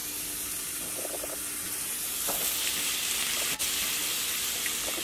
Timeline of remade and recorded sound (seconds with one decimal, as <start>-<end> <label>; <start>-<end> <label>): 0.0-5.0 recorded